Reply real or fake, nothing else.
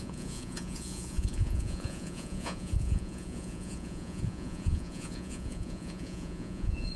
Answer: fake